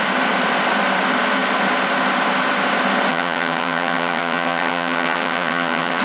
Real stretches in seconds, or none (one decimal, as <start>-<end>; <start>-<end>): 0.0-3.1